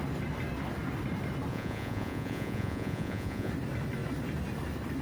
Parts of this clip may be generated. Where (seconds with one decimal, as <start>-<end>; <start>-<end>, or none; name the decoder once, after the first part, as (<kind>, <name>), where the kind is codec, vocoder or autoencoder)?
1.5-3.5 (vocoder, Vocos)